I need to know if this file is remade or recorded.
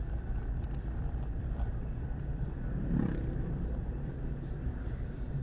remade